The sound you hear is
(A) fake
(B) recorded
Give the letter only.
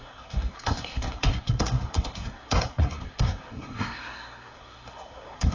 A